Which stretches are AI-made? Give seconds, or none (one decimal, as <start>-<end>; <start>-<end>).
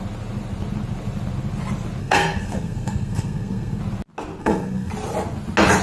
2.0-3.8; 4.4-4.9